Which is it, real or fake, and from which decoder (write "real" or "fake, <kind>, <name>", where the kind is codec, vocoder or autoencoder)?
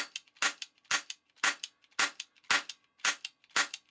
real